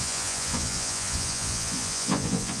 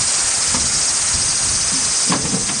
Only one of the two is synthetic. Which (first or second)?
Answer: first